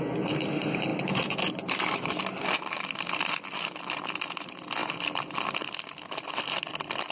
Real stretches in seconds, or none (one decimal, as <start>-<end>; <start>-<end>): 0.0-7.1